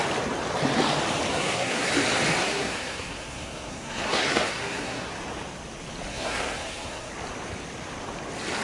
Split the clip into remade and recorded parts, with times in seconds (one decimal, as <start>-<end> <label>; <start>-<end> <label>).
0.0-1.3 recorded; 1.3-1.9 remade; 1.9-2.4 recorded; 2.4-5.1 remade; 5.1-6.1 recorded; 6.1-7.1 remade; 7.1-8.6 recorded